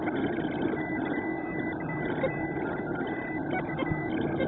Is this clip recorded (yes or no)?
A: yes